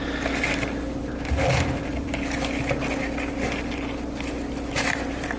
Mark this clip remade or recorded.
recorded